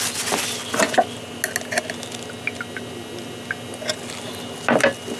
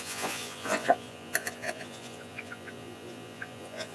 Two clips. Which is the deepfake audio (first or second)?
second